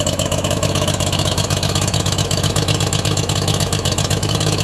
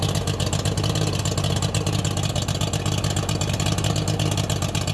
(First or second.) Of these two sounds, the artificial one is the first